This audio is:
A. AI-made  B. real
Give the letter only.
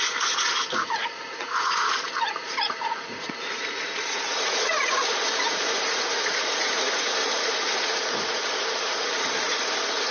A